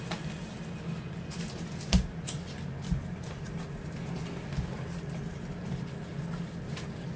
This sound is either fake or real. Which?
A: real